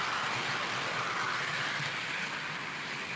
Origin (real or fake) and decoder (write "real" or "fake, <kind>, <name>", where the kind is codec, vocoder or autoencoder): real